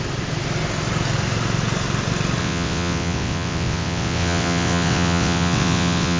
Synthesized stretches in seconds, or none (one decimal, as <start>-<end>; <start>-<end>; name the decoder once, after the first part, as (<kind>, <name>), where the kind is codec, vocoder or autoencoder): 2.4-6.2 (vocoder, WaveNeXt)